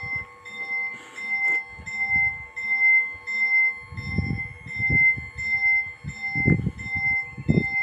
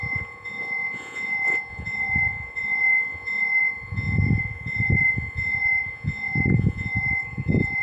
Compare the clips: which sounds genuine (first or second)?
first